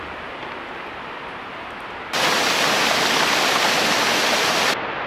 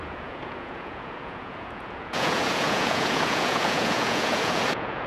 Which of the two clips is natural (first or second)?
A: first